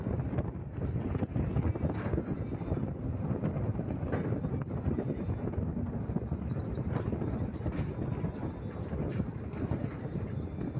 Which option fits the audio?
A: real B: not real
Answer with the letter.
A